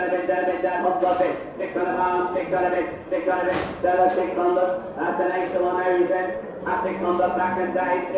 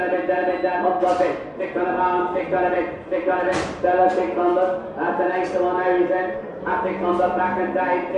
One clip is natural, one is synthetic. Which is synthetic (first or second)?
first